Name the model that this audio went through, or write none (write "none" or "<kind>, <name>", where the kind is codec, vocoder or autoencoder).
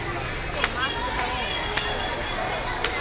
none